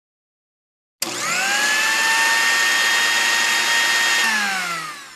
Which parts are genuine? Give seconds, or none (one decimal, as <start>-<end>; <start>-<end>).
0.0-2.8; 3.6-5.2